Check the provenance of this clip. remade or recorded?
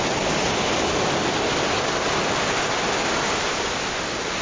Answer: recorded